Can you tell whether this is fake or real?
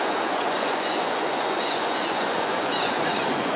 fake